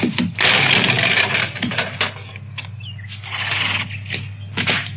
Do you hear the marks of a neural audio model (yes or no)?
no